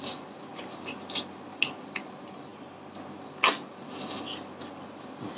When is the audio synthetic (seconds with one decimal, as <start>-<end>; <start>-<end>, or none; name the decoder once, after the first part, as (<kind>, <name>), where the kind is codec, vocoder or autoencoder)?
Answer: 0.0-0.5 (vocoder, BigVGAN v2); 1.1-2.5; 4.9-5.4